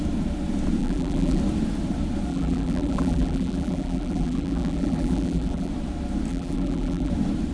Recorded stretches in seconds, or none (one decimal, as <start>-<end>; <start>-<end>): 0.0-0.8; 1.4-2.3; 5.7-6.3; 7.1-7.5